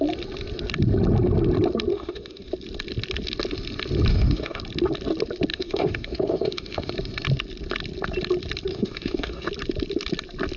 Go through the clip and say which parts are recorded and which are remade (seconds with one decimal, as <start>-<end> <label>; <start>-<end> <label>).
0.0-1.9 recorded; 1.9-2.5 remade; 2.5-4.1 recorded; 4.1-4.6 remade; 4.6-5.5 recorded; 5.5-6.9 remade; 6.9-8.7 recorded; 8.7-9.5 remade; 9.5-10.6 recorded